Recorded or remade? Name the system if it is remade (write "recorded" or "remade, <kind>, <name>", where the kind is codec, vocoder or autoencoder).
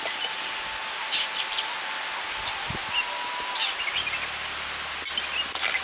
recorded